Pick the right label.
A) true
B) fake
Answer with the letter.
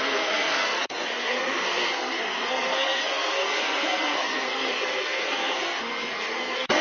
B